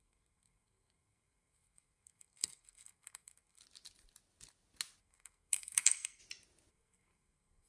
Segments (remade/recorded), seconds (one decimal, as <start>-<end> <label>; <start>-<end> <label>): 0.0-3.6 remade; 3.6-5.0 recorded; 5.0-6.2 remade; 6.2-6.7 recorded; 6.7-7.7 remade